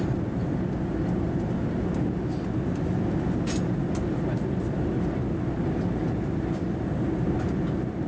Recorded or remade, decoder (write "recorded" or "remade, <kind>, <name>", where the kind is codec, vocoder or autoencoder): recorded